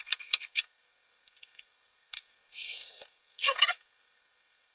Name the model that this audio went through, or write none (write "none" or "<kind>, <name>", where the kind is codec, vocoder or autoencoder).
codec, SNAC